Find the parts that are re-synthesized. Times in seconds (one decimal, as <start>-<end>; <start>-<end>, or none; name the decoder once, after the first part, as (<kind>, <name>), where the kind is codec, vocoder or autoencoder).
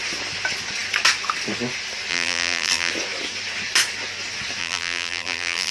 2.1-2.9 (vocoder, BigVGAN v2); 4.6-5.7